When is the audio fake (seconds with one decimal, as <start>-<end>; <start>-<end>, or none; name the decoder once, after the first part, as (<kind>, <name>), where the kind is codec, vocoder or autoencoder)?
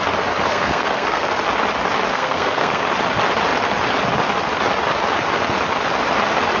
0.5-1.3 (codec, SNAC); 2.1-2.8